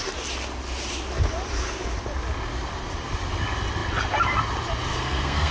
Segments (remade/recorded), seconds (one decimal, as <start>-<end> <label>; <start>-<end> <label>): 0.0-4.9 recorded; 4.9-5.5 remade